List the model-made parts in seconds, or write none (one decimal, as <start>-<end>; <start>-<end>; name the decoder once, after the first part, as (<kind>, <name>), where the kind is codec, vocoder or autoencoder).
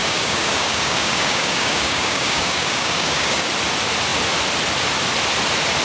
0.0-3.5 (codec, DAC)